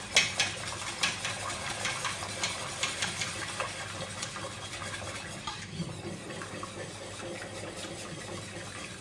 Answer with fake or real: real